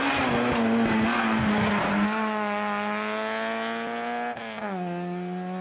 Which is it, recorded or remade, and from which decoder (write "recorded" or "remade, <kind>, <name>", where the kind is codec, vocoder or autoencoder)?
recorded